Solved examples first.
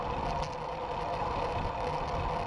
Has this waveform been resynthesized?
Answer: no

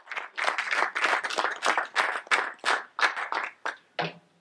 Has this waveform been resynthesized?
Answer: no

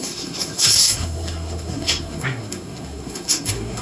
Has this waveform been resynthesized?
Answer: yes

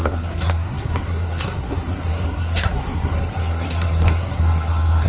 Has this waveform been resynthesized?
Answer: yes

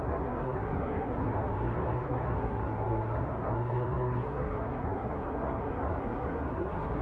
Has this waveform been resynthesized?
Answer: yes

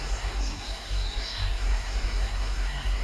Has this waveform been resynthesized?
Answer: yes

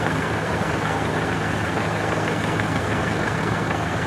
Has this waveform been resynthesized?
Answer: yes